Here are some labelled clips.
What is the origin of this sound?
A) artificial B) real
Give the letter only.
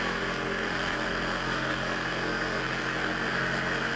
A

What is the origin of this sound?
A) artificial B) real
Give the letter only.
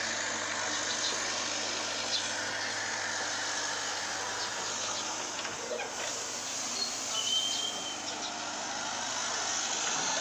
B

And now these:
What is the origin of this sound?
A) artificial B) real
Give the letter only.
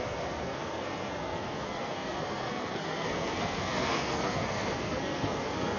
A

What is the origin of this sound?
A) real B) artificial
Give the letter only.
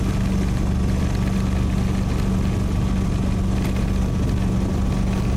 A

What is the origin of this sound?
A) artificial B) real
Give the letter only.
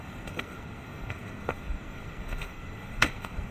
A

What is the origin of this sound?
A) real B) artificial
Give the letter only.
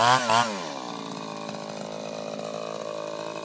A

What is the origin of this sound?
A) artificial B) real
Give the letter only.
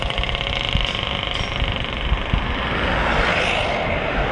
B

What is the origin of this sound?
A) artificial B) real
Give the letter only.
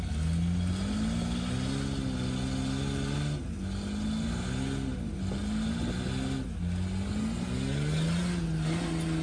B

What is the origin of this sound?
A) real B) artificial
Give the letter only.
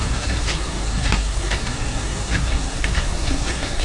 B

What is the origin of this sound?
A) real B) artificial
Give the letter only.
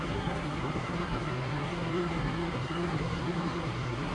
B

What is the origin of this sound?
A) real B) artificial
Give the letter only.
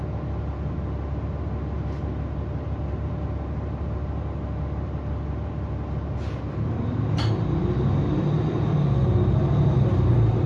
A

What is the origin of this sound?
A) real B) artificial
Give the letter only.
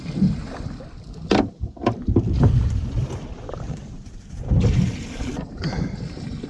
A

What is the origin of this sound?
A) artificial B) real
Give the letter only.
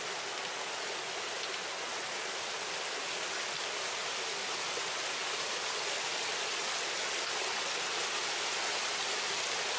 B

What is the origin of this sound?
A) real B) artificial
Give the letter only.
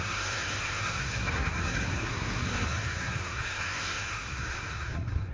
B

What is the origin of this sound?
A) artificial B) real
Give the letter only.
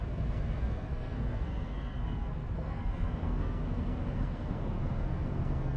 A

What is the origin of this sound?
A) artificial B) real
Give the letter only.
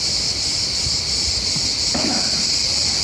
B